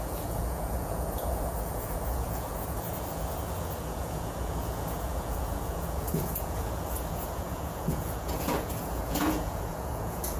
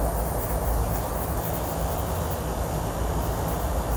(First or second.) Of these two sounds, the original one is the second